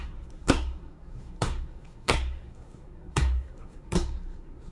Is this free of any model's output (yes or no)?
no